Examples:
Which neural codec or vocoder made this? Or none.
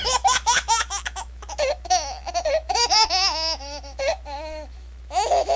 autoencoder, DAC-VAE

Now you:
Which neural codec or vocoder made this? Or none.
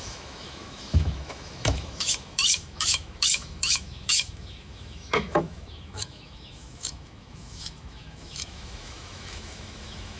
autoencoder, DAC-VAE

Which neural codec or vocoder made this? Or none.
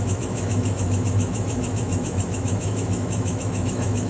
autoencoder, DAC-VAE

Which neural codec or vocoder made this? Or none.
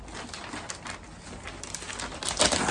none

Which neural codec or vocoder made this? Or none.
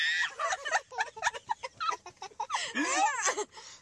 none